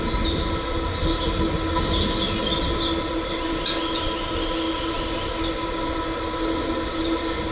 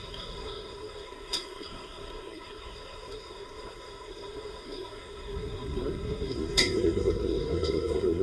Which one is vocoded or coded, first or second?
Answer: second